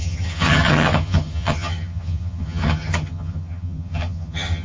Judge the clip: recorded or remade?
remade